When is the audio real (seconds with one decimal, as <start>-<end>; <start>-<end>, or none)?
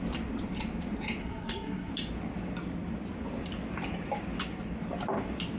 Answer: 0.0-1.2; 1.9-5.6